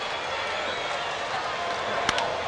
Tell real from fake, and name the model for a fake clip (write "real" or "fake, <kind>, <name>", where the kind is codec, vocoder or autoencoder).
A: real